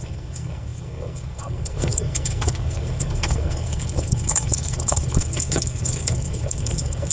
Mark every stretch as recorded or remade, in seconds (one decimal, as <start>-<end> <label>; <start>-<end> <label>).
0.0-7.1 remade